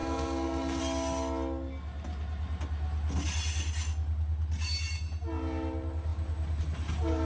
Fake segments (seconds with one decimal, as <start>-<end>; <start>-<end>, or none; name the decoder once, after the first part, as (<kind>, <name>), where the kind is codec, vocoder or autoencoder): 0.0-0.8 (codec, SNAC)